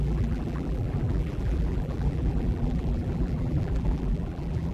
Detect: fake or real fake